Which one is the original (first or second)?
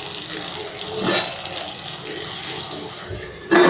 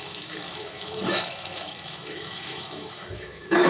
first